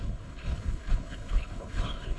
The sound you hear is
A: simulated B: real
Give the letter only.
A